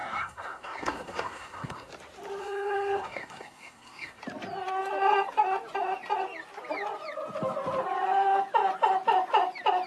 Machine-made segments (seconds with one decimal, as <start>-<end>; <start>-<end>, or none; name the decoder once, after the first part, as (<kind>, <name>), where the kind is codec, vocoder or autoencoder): 0.0-1.9 (codec, SNAC); 2.4-4.2